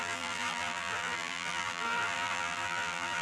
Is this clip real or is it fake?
fake